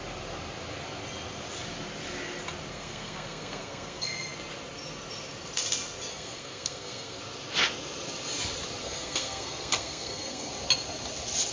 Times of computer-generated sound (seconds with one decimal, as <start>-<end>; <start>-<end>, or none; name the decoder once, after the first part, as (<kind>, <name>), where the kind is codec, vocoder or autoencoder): 2.7-4.3 (codec, SNAC); 6.1-7.2; 8.8-10.5